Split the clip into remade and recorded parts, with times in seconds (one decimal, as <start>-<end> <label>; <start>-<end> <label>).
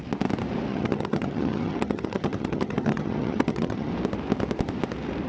0.0-0.7 recorded; 0.7-3.9 remade; 3.9-5.3 recorded